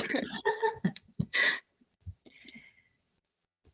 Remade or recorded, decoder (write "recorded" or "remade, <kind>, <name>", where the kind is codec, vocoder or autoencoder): remade, vocoder, Vocos